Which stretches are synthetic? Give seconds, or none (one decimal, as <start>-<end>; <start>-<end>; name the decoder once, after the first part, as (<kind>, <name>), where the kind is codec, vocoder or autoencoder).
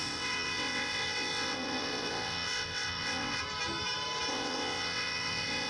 0.0-3.4 (vocoder, WaveNeXt); 4.3-5.7